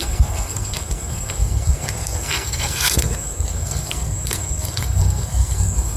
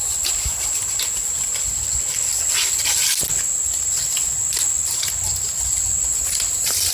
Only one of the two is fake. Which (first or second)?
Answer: first